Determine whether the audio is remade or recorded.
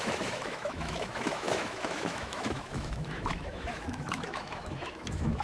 remade